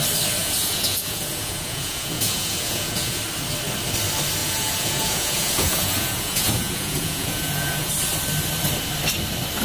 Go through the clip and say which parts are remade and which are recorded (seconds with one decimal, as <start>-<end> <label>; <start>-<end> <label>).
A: 0.0-0.4 recorded; 0.4-3.2 remade; 3.2-4.4 recorded; 4.4-7.9 remade; 7.9-9.6 recorded